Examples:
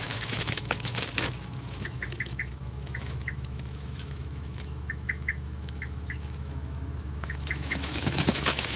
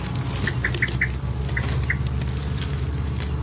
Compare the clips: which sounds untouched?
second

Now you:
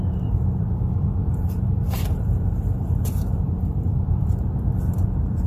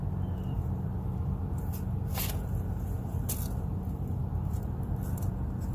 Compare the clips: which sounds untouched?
second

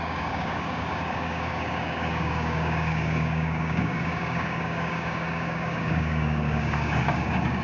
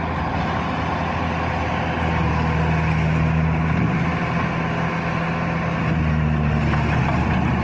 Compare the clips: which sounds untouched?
second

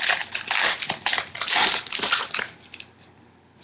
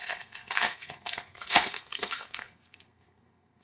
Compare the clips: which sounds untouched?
first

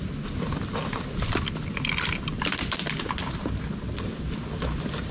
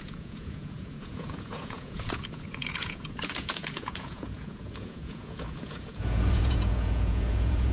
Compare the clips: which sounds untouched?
first